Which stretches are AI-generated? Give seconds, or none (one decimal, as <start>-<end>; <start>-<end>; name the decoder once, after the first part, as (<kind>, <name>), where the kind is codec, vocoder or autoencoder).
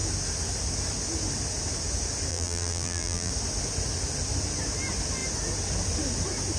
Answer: 2.3-3.3 (vocoder, BigVGAN v2)